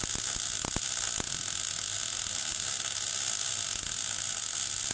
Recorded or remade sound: recorded